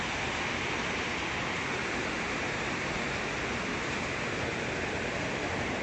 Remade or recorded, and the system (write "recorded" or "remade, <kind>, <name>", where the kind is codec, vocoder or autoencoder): recorded